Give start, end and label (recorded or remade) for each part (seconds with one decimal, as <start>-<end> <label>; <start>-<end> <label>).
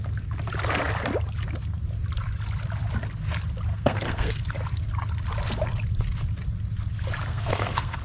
0.0-3.7 recorded; 3.7-4.4 remade; 4.4-7.3 recorded; 7.3-8.0 remade